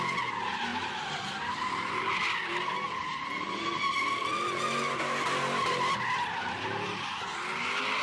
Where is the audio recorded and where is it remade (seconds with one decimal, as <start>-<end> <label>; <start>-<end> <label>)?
0.0-0.7 recorded; 0.7-2.0 remade; 2.0-3.0 recorded; 3.0-7.0 remade; 7.0-8.0 recorded